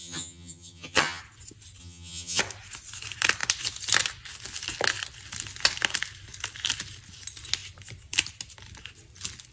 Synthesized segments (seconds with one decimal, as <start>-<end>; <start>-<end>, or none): 0.0-1.2; 1.8-2.4